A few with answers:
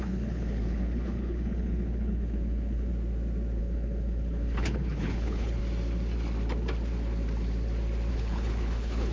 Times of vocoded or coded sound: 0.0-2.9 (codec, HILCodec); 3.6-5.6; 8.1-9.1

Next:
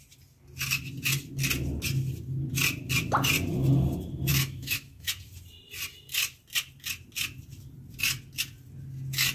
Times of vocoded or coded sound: 4.3-5.1 (autoencoder, DAC-VAE)

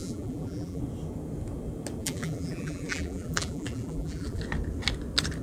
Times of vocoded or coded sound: 0.0-0.8 (vocoder, BigVGAN v2); 2.0-4.4

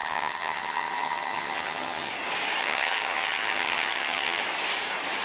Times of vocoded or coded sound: 0.0-2.1 (vocoder, HiFi-GAN); 2.6-4.4

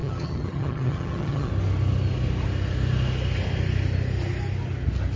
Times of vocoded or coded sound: 0.0-1.5 (vocoder, HiFi-GAN)

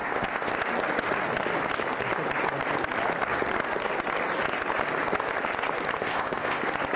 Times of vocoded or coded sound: 0.0-0.5 (codec, ZipCodec); 6.0-6.6